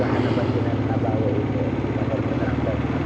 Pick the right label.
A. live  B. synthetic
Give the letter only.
A